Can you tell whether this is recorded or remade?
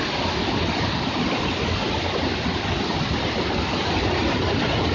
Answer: recorded